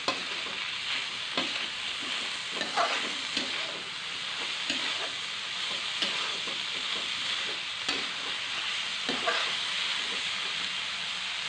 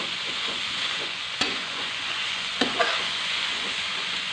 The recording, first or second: first